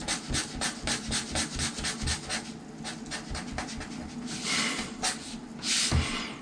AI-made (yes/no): no